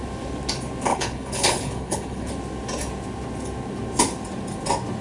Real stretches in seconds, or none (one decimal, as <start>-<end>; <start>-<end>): 0.0-0.9; 2.3-5.0